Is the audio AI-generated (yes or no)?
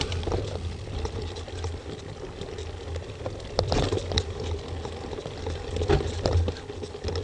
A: no